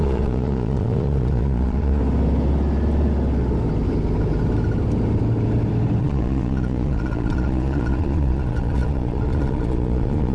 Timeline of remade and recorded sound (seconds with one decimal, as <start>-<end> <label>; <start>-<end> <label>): 0.0-2.0 remade; 2.0-6.0 recorded; 6.0-10.3 remade